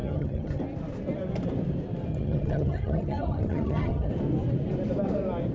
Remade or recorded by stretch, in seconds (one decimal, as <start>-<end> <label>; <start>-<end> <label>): 0.0-0.6 remade; 0.6-2.1 recorded; 2.1-4.1 remade; 4.1-5.5 recorded